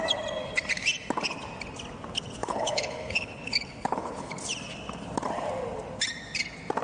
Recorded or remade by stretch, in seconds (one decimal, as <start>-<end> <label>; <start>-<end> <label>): 0.0-2.4 recorded; 2.4-4.3 remade; 4.3-6.8 recorded